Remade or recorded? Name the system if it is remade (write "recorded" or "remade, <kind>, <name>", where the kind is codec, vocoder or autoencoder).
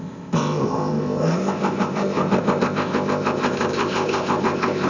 remade, codec, ZipCodec